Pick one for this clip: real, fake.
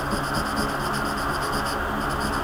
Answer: real